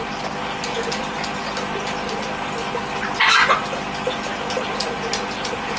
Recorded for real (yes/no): yes